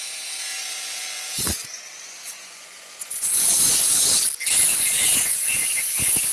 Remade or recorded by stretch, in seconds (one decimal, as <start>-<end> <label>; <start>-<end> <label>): 0.0-0.6 recorded; 0.6-4.0 remade; 4.0-4.7 recorded; 4.7-6.3 remade